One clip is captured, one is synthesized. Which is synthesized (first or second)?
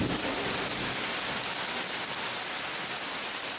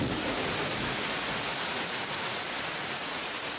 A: second